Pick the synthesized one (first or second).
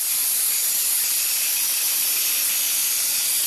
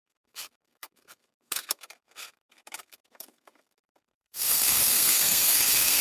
second